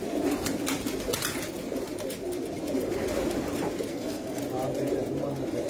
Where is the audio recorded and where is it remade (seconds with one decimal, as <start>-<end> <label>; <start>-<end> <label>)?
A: 0.0-3.9 recorded; 3.9-4.4 remade; 4.4-5.7 recorded